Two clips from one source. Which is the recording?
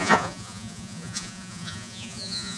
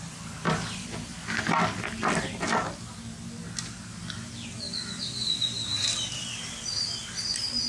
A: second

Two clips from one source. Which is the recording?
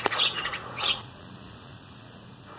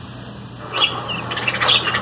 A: second